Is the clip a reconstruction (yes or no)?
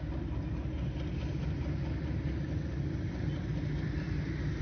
no